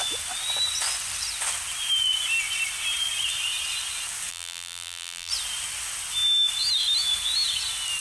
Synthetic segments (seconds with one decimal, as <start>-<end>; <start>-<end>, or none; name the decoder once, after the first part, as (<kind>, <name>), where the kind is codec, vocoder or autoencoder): 4.3-5.3 (vocoder, BigVGAN v2)